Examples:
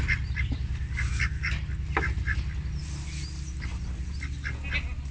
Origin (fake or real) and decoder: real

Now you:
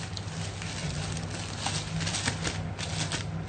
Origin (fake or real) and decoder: real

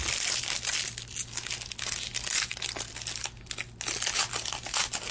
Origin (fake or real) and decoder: real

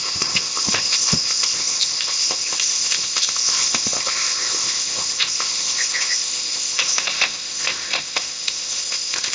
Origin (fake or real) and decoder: fake, codec, ZipCodec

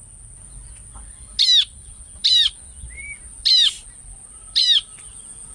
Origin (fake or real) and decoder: real